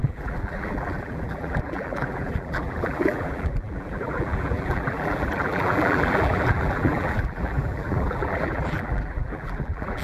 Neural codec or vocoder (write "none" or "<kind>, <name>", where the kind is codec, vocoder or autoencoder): vocoder, BigVGAN v2